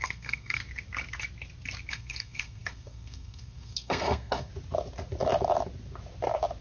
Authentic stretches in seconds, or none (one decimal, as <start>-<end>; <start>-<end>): 0.6-1.9; 4.5-6.6